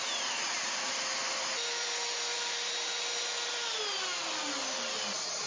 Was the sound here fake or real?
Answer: real